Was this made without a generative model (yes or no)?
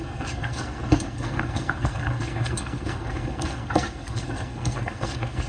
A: no